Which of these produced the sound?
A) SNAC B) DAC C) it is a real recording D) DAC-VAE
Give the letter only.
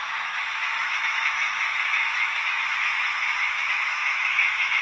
D